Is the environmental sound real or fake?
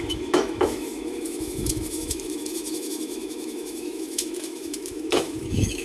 fake